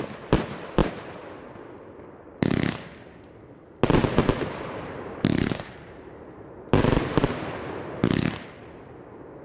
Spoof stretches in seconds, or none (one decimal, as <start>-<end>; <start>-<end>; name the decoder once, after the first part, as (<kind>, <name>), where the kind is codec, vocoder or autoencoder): 4.0-7.6 (vocoder, BigVGAN v2)